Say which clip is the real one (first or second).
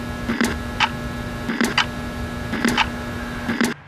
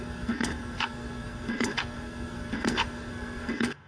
first